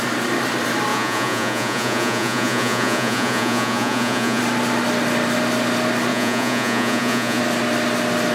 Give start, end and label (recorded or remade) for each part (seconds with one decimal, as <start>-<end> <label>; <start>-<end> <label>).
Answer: 0.0-0.9 recorded; 0.9-4.4 remade; 4.4-6.1 recorded; 6.1-7.4 remade; 7.4-8.3 recorded